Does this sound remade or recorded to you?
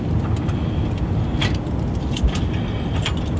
recorded